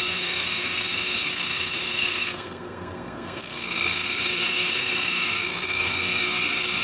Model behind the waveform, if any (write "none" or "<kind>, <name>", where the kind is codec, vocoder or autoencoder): codec, SNAC